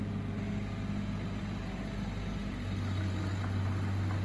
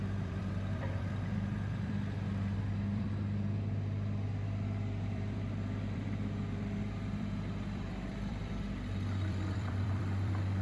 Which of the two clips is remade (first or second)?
second